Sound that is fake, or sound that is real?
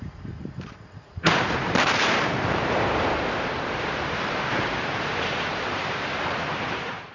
fake